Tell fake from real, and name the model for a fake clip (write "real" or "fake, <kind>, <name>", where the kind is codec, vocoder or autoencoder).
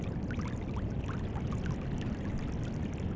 real